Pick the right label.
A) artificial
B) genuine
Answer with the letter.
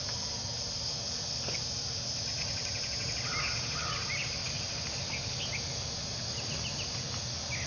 B